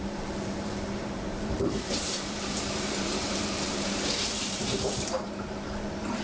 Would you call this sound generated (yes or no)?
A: yes